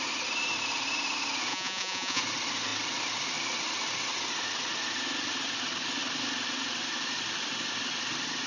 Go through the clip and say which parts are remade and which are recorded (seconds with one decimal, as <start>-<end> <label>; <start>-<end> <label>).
0.0-1.5 recorded; 1.5-2.2 remade; 2.2-8.5 recorded